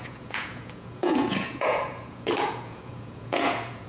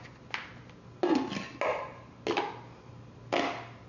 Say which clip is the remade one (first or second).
first